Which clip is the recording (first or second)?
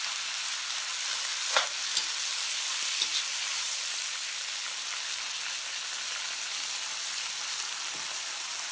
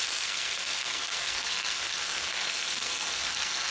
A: first